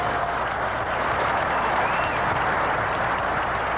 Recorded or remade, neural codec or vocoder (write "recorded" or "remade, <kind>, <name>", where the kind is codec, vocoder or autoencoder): recorded